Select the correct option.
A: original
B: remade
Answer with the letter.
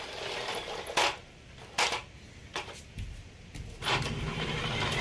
B